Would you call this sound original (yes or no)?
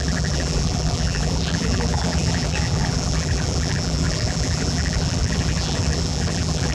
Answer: no